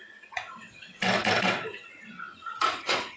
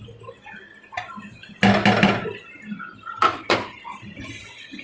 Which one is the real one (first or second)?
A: second